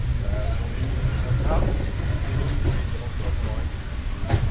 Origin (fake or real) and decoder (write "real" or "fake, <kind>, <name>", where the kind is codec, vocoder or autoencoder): real